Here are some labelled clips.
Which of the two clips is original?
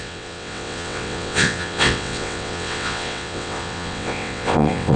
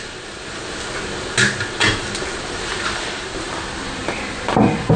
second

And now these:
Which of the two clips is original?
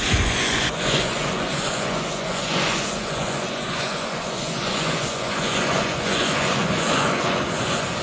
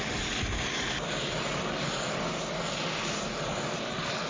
second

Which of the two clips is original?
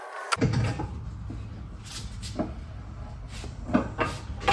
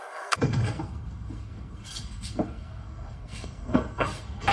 first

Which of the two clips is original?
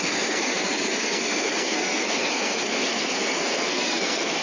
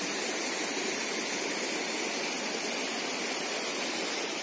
second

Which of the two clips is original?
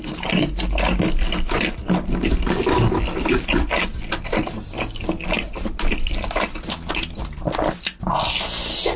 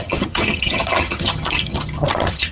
first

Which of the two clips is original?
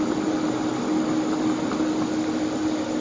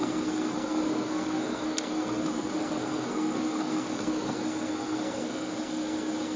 first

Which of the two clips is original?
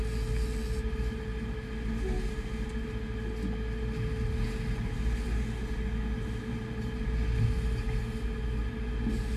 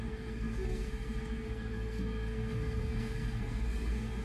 first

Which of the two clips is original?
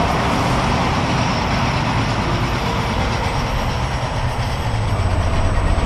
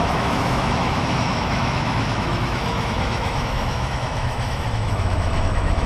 first